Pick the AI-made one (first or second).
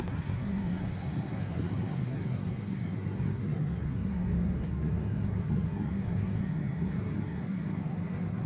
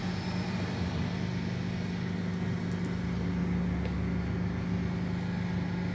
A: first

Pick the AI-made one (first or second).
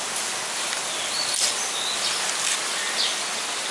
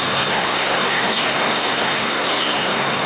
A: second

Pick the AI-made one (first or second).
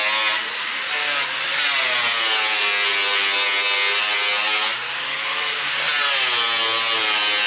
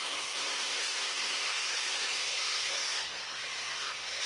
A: second